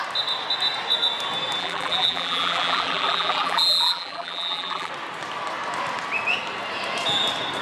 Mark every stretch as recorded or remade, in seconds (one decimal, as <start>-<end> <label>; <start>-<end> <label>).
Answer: 0.0-1.6 recorded; 1.6-4.9 remade; 4.9-7.6 recorded